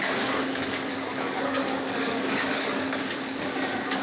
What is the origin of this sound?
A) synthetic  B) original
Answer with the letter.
A